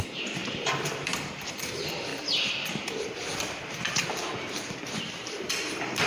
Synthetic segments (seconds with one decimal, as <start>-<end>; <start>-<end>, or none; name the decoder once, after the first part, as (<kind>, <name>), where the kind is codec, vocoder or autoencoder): 0.0-2.1 (vocoder, BigVGAN v2); 5.1-6.1